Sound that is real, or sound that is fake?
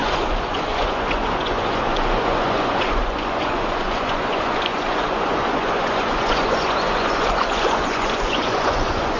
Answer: fake